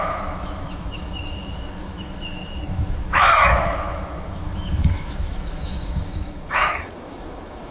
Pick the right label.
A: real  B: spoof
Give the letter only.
B